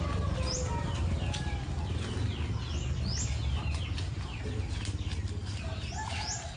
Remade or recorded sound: recorded